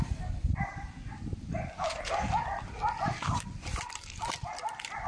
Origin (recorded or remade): remade